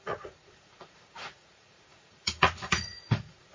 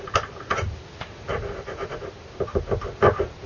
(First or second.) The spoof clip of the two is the first